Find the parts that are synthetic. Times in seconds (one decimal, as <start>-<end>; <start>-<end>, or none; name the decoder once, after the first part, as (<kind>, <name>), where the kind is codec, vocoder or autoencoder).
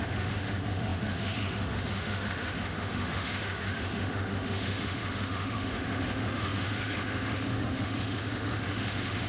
0.0-9.3 (autoencoder, DAC-VAE)